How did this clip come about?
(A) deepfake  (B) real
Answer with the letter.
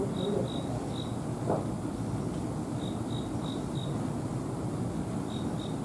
B